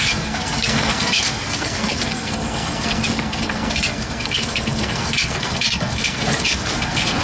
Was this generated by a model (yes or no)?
yes